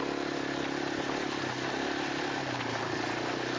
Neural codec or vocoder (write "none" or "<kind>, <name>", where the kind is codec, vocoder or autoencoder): none